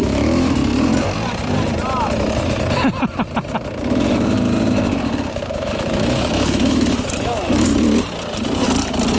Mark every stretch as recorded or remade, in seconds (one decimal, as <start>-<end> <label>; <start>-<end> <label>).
0.0-0.6 remade; 0.6-5.3 recorded; 5.3-7.7 remade; 7.7-9.2 recorded